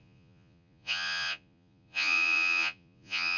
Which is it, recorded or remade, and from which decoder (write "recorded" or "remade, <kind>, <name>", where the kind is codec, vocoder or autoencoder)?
remade, vocoder, Vocos